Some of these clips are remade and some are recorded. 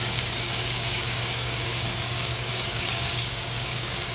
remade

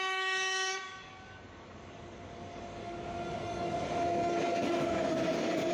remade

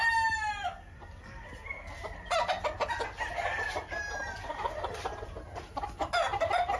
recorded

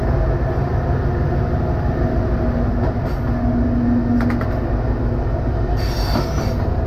recorded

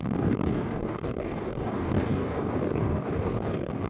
remade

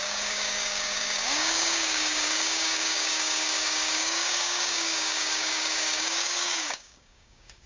remade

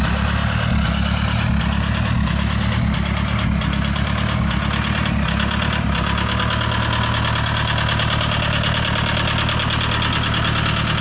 recorded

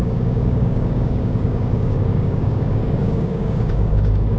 remade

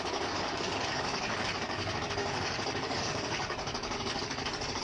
remade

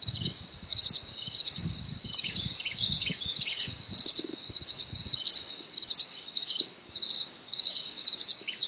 remade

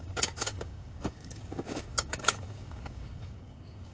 remade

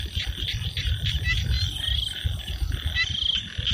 recorded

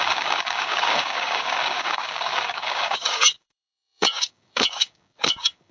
remade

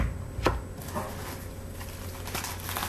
recorded